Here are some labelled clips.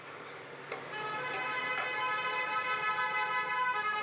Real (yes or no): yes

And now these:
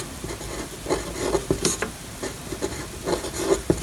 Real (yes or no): yes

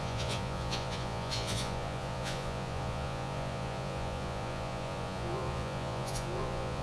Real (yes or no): no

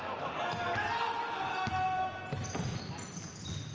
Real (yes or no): yes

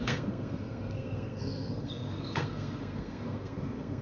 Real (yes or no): no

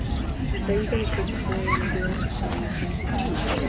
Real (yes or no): yes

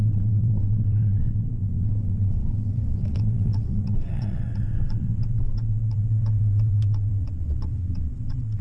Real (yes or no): no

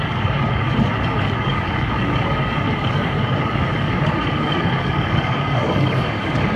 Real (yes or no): no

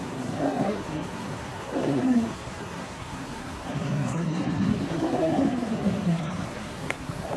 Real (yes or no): no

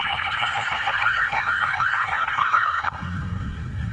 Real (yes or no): no